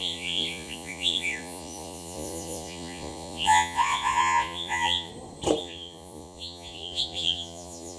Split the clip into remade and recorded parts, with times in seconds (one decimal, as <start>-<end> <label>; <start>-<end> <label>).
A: 0.0-5.1 remade; 5.1-5.6 recorded; 5.6-8.0 remade